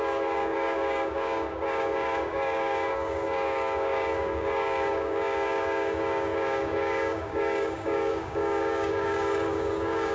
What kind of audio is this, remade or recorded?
remade